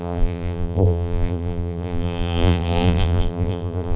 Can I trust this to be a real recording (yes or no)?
no